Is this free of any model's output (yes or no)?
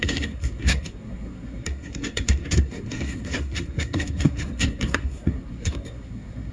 no